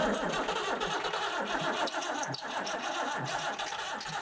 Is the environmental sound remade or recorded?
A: recorded